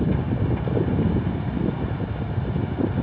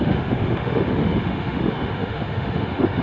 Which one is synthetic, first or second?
second